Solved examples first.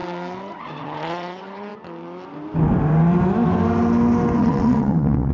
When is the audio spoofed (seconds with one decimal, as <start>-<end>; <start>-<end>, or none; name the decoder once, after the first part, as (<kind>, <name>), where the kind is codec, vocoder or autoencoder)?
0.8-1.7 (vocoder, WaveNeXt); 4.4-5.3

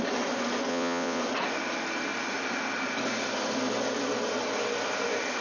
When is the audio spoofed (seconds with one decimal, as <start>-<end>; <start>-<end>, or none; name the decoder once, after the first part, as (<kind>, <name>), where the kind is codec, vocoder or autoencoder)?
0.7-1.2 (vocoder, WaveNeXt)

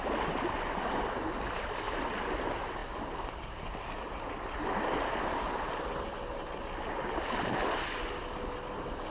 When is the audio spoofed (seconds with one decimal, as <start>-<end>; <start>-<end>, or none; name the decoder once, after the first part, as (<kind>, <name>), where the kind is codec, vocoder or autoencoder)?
none

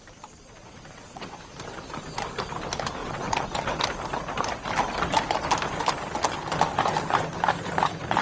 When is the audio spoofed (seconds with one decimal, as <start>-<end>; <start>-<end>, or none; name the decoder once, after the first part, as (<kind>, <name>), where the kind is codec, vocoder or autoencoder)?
0.6-1.4 (vocoder, WaveNeXt); 3.0-3.8

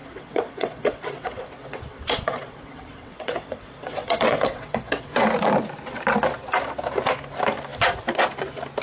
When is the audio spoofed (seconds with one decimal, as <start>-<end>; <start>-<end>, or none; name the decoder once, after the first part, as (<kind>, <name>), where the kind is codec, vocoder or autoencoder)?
0.0-5.2 (vocoder, WaveNeXt)

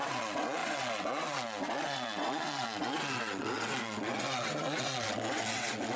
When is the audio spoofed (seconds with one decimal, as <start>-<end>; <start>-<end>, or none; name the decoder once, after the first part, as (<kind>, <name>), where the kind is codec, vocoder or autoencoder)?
0.0-6.0 (vocoder, WaveNeXt)

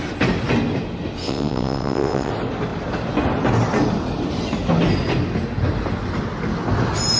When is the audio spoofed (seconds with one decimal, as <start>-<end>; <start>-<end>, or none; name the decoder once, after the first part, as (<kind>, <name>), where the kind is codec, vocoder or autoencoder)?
1.2-2.3 (vocoder, WaveNeXt)

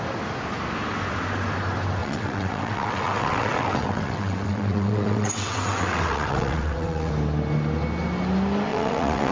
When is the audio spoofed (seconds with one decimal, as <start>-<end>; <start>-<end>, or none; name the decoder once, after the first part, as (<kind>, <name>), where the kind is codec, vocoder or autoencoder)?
2.0-7.1 (vocoder, WaveNeXt); 8.7-9.3